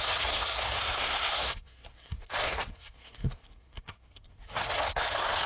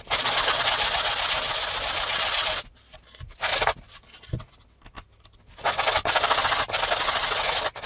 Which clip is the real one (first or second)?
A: second